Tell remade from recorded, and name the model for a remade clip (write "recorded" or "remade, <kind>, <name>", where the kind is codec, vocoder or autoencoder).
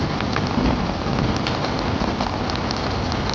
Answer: recorded